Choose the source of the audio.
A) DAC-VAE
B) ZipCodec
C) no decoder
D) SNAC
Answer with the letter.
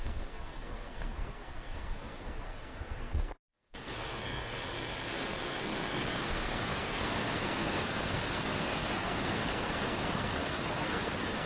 D